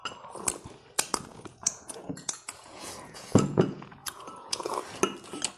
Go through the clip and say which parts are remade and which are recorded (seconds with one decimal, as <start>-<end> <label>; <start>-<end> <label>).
0.0-1.3 recorded; 1.3-4.7 remade; 4.7-5.6 recorded